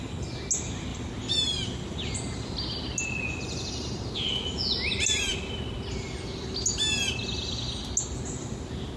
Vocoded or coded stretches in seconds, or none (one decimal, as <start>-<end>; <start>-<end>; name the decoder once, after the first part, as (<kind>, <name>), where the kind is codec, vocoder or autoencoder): none